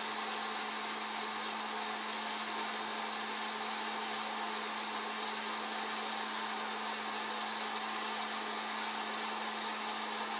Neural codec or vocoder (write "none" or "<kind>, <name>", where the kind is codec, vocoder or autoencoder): none